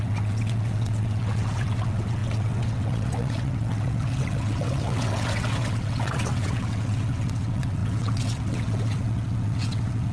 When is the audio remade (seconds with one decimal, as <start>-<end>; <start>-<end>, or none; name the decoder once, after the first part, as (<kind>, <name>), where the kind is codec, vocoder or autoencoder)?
0.0-10.1 (vocoder, WaveNeXt)